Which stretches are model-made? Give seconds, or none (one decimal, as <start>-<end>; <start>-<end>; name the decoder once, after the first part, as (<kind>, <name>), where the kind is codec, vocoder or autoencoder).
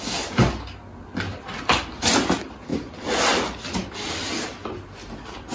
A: none